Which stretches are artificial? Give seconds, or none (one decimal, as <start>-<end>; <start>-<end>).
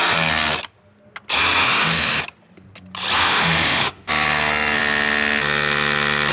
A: 1.6-2.2; 3.3-4.1